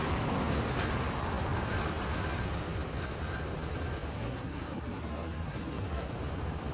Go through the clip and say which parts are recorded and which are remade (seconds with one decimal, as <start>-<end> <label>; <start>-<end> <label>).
0.0-4.1 recorded; 4.1-6.1 remade; 6.1-6.7 recorded

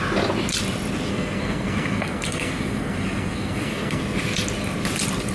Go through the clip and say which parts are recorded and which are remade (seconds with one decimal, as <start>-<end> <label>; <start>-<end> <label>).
0.0-1.1 recorded; 1.1-4.0 remade; 4.0-5.3 recorded

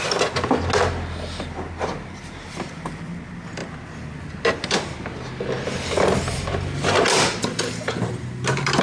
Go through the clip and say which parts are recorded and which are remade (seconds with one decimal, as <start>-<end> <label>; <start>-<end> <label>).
0.0-8.8 recorded

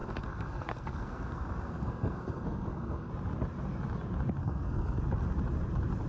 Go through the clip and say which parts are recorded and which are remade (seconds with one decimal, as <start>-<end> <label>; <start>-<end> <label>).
0.0-3.1 remade; 3.1-4.4 recorded; 4.4-5.0 remade; 5.0-6.1 recorded

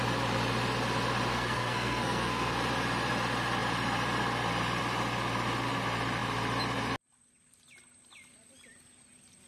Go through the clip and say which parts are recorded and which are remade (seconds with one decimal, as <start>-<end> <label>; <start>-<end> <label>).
0.0-1.3 recorded; 1.3-2.5 remade; 2.5-9.5 recorded